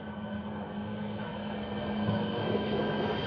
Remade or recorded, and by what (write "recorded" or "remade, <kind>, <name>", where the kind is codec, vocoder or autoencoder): remade, codec, SNAC